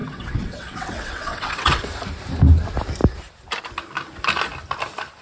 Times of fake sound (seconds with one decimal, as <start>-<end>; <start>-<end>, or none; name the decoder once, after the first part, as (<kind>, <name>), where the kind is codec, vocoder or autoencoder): 0.0-1.8 (vocoder, WaveNeXt)